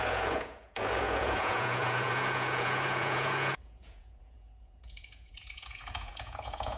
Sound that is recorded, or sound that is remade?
remade